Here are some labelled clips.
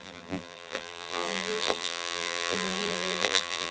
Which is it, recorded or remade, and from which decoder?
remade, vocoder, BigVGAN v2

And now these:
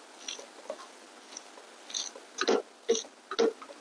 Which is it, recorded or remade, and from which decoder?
recorded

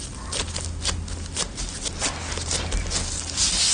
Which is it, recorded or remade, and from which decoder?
recorded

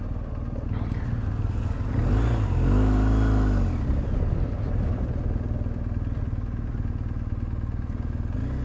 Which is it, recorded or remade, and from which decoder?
recorded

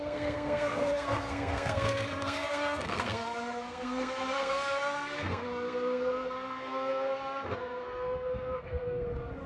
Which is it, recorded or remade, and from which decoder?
remade, codec, SNAC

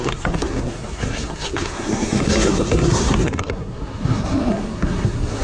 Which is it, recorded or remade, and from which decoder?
remade, codec, SNAC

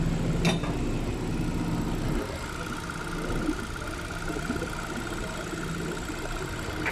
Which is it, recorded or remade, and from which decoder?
recorded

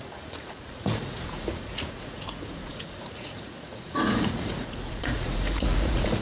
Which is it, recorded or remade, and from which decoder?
remade, vocoder, Vocos